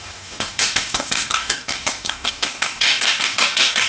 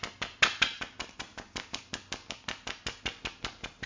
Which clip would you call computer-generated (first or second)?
first